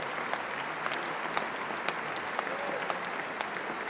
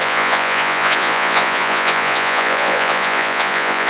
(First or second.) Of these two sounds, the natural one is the first